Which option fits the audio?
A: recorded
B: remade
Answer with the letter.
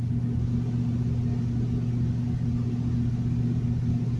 A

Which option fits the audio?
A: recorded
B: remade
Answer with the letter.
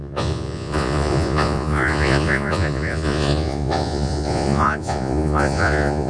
B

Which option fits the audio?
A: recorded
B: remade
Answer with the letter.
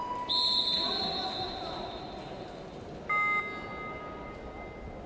A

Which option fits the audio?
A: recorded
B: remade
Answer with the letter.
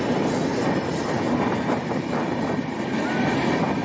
A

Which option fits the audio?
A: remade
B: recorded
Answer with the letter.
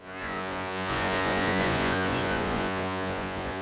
A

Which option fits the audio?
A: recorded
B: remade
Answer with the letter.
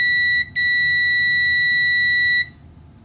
A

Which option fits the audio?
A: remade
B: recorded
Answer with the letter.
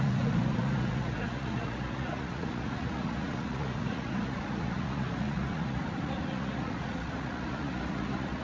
A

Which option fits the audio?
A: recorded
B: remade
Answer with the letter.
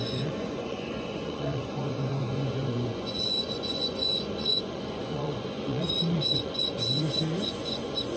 B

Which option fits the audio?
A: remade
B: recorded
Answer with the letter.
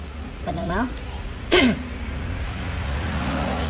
A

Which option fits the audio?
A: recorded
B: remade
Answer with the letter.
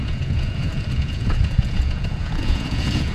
B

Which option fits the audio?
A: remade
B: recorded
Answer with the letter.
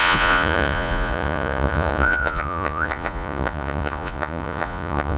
A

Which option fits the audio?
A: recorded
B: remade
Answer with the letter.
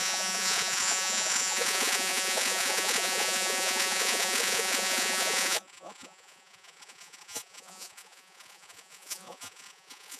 B